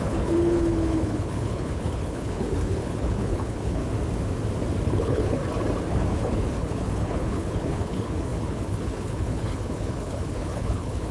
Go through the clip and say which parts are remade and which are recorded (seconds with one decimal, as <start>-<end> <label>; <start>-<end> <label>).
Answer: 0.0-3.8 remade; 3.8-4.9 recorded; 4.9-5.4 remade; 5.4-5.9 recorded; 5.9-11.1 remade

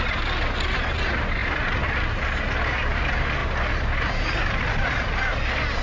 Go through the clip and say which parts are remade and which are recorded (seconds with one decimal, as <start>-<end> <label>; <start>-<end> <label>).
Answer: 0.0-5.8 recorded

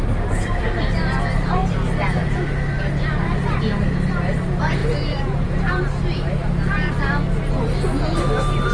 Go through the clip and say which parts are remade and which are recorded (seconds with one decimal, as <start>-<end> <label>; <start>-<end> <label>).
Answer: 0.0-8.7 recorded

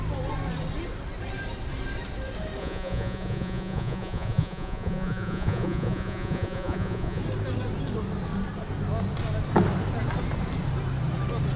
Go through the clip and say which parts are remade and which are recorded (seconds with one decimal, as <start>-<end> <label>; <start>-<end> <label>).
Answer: 0.0-2.6 recorded; 2.6-7.2 remade; 7.2-11.6 recorded